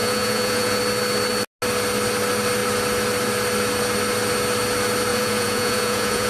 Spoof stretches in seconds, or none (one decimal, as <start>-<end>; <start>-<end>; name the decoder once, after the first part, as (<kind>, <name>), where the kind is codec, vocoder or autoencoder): 0.0-0.8 (vocoder, Vocos); 5.1-6.3